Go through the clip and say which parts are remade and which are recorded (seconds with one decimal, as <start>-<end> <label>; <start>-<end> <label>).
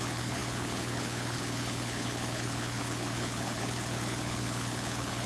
0.0-5.3 remade